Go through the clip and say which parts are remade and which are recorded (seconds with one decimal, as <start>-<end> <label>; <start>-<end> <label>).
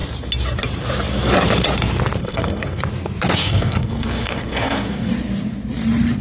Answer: 0.0-2.2 recorded; 2.2-2.8 remade; 2.8-3.4 recorded; 3.4-5.1 remade; 5.1-6.2 recorded